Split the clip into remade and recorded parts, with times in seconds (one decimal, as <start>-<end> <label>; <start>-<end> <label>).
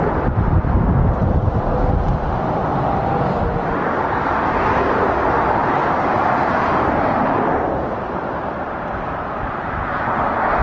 0.0-1.2 recorded; 1.2-1.7 remade; 1.7-2.1 recorded; 2.1-3.4 remade; 3.4-5.8 recorded; 5.8-7.7 remade; 7.7-10.6 recorded